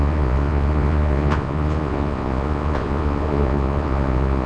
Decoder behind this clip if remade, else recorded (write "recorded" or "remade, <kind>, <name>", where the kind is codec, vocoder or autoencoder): remade, vocoder, Vocos